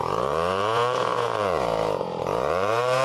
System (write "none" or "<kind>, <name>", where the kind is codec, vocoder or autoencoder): vocoder, Vocos